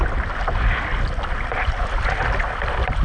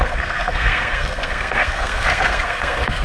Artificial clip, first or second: second